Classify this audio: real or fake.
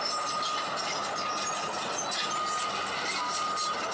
real